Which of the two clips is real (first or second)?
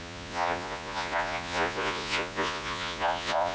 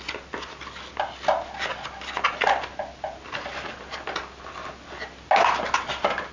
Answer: second